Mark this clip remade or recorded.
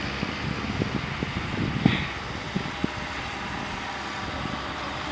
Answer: recorded